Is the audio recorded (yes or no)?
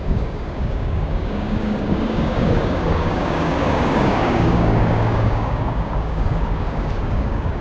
no